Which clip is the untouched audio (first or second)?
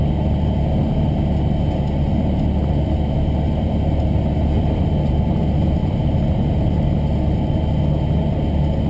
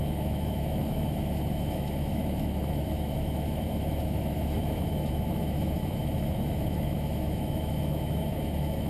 first